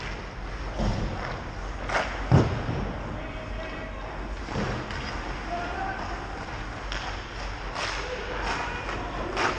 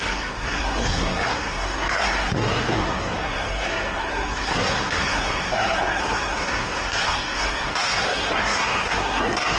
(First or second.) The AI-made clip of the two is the second